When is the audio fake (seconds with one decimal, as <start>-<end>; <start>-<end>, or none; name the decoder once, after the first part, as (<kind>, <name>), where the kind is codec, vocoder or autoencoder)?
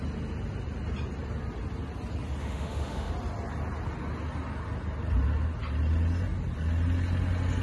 2.4-3.1 (autoencoder, DAC-VAE)